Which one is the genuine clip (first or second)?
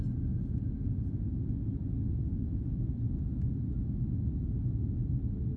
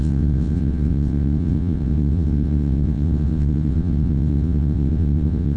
first